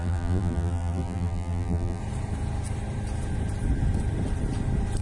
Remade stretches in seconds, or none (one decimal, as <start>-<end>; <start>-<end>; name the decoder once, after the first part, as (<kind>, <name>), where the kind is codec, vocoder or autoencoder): 0.0-2.0 (vocoder, BigVGAN v2)